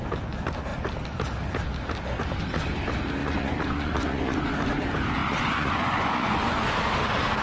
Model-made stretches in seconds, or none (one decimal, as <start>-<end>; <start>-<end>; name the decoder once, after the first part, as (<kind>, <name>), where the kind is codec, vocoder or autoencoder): 3.2-4.4 (vocoder, Vocos); 5.2-6.7